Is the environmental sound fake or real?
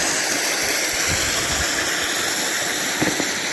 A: real